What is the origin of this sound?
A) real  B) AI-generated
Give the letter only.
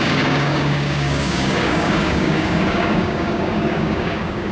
B